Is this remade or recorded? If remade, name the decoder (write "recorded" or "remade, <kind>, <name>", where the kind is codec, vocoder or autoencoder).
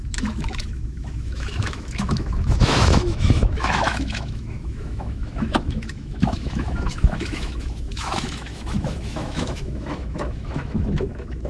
remade, autoencoder, DAC-VAE